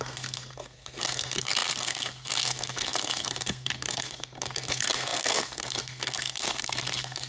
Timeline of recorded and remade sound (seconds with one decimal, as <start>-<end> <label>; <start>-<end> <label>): 0.0-7.3 remade